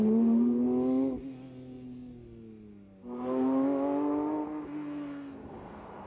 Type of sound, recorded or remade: recorded